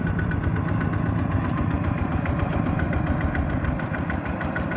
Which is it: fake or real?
real